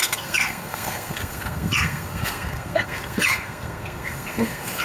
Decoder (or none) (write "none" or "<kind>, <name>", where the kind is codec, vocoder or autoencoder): codec, SNAC